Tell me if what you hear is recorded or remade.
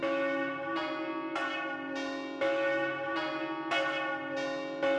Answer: recorded